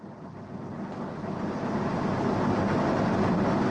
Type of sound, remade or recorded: recorded